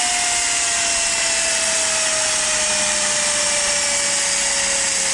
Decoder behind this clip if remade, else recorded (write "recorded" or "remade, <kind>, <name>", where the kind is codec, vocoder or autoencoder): recorded